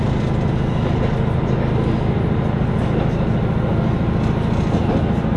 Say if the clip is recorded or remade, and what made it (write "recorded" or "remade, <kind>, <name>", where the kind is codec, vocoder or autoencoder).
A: recorded